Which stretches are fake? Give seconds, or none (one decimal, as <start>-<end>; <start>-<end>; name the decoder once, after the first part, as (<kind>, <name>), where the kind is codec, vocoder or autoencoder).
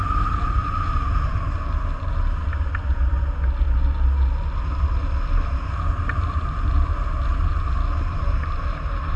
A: 0.0-2.5 (vocoder, BigVGAN v2); 5.5-7.5; 8.1-9.2